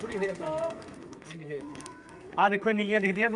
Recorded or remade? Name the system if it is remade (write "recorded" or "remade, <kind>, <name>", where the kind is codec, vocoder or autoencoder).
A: remade, codec, SNAC